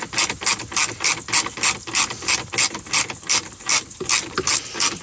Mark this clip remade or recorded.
recorded